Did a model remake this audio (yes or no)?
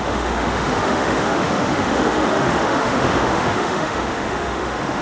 yes